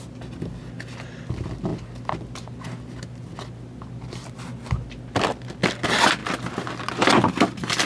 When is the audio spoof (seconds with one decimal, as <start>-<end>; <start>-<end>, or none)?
none